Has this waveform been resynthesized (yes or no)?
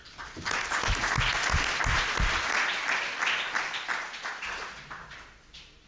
no